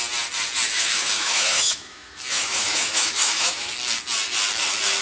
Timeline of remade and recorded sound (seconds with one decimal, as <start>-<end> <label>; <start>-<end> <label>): 0.0-0.7 recorded; 0.7-3.7 remade; 3.7-5.0 recorded